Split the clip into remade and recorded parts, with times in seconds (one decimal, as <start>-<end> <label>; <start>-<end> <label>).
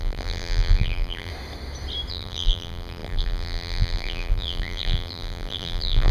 0.0-1.3 remade; 1.3-2.1 recorded; 2.1-6.1 remade